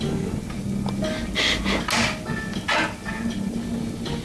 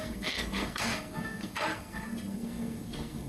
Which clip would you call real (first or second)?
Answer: first